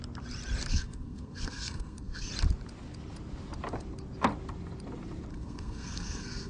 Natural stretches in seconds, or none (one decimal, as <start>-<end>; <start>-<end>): 0.0-0.7; 2.3-5.3